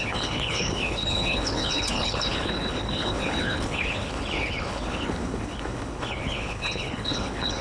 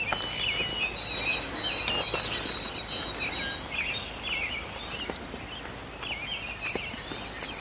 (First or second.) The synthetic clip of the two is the first